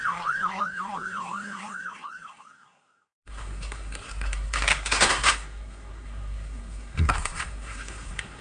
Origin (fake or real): fake